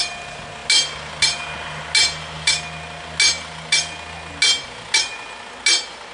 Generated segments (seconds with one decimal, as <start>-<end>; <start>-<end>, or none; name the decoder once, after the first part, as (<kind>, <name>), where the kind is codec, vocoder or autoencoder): none